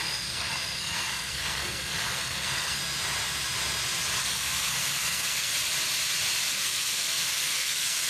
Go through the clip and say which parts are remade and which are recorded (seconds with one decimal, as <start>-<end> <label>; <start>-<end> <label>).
0.0-2.8 remade; 2.8-4.2 recorded; 4.2-5.5 remade; 5.5-6.5 recorded; 6.5-8.1 remade

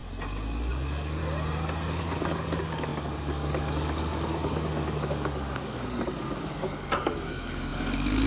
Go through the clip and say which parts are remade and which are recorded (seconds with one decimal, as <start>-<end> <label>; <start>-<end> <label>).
0.0-0.7 recorded; 0.7-1.2 remade; 1.2-1.9 recorded; 1.9-8.3 remade